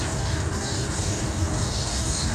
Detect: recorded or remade remade